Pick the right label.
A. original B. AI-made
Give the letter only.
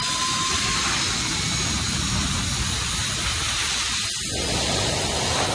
A